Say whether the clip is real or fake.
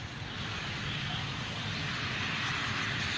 real